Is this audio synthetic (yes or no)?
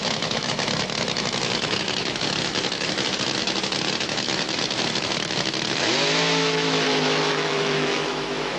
yes